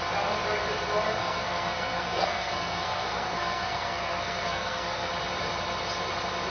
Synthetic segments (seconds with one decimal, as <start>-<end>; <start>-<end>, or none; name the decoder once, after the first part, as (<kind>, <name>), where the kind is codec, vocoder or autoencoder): 1.2-5.1 (codec, SNAC)